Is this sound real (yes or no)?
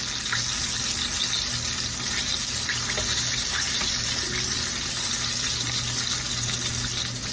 yes